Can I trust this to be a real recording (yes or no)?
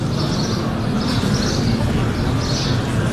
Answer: yes